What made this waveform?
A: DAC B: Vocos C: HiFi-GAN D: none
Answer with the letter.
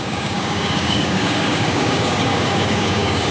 A